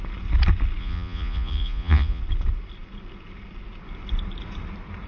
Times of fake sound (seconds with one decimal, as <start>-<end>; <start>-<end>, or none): 0.8-2.2